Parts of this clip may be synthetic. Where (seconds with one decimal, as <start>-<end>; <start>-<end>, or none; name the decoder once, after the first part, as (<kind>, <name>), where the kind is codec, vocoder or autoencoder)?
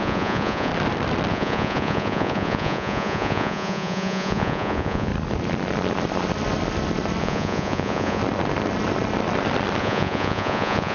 0.0-0.7 (vocoder, Vocos); 1.3-5.1; 7.2-8.2; 9.8-10.9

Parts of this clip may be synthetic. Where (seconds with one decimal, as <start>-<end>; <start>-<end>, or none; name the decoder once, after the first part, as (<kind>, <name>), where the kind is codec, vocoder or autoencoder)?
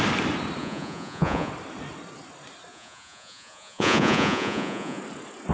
0.6-1.5 (vocoder, Vocos); 2.7-5.0